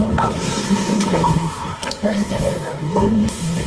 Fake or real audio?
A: fake